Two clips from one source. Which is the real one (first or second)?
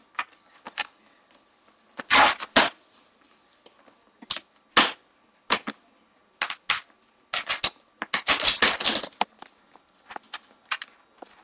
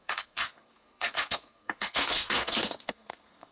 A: first